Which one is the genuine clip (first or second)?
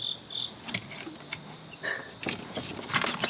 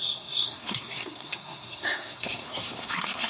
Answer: first